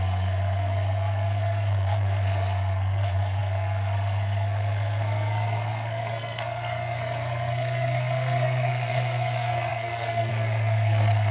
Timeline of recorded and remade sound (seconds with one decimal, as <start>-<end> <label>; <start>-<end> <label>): 0.0-11.3 remade